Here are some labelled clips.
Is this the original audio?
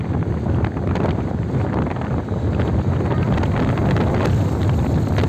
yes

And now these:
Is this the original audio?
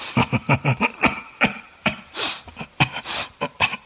no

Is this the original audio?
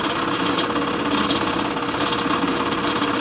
yes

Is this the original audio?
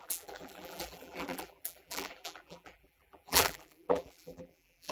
no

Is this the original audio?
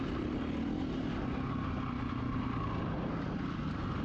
yes